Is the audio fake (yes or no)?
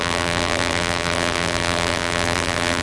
yes